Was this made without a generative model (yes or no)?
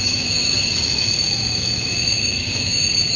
no